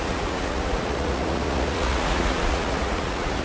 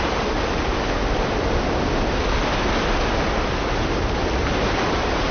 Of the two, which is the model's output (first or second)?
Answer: first